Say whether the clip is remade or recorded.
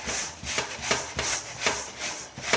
recorded